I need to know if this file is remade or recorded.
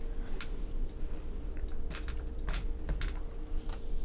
recorded